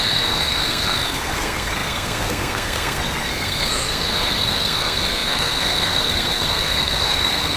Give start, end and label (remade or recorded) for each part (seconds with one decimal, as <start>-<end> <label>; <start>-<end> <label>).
0.0-7.6 remade

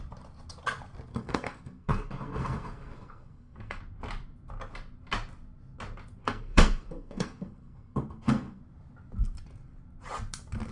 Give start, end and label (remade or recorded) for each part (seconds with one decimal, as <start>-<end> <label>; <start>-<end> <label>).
0.0-1.1 recorded; 1.1-3.8 remade; 3.8-6.2 recorded; 6.2-8.6 remade; 8.6-10.7 recorded

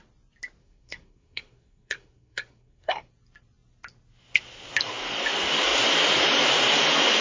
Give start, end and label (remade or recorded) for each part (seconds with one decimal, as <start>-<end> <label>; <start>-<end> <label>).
0.0-0.6 recorded; 0.6-3.1 remade; 3.1-7.2 recorded